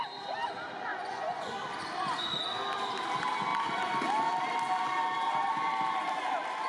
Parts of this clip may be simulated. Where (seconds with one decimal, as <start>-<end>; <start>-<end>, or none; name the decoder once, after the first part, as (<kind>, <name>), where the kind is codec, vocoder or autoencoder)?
0.9-1.5 (vocoder, Vocos)